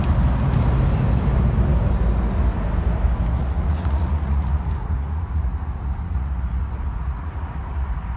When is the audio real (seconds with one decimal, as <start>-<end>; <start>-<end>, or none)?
0.0-3.4